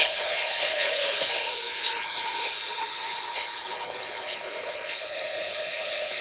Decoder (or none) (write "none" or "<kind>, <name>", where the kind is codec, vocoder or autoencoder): codec, HILCodec